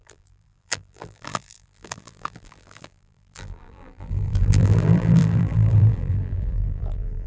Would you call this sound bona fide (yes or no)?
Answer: no